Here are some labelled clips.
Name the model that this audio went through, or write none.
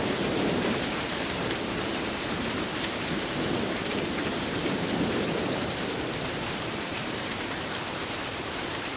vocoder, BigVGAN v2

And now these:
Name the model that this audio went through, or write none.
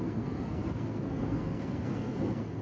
codec, SNAC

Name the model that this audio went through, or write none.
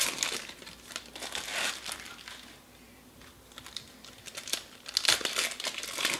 none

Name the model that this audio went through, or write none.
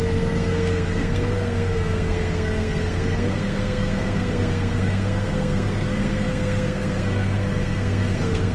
codec, SNAC